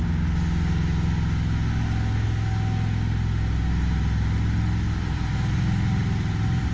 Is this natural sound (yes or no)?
yes